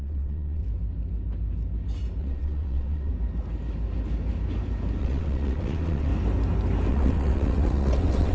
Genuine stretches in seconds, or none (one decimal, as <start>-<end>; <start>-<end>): 0.6-2.2; 3.1-5.0; 6.1-6.9